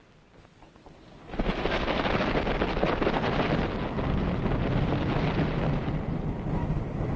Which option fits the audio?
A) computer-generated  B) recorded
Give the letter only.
B